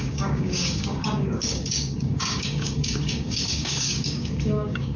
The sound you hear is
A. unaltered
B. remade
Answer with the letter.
B